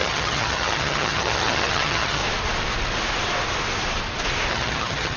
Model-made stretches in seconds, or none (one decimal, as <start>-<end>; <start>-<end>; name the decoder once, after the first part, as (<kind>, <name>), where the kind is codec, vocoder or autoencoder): 0.0-2.2 (vocoder, HiFi-GAN); 4.5-5.2